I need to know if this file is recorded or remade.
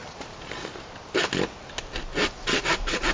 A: recorded